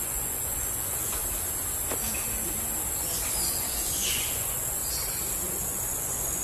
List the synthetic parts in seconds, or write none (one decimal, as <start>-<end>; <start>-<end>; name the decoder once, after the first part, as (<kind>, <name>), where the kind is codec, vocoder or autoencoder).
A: 0.0-1.2 (vocoder, Vocos); 3.4-4.8; 5.4-6.4